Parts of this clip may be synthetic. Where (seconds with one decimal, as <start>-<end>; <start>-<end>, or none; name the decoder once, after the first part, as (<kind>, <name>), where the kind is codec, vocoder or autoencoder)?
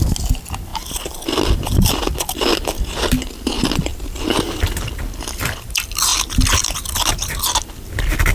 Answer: none